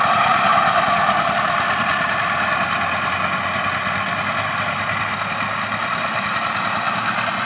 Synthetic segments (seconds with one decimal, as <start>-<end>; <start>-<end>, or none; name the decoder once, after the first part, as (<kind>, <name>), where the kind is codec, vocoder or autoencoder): none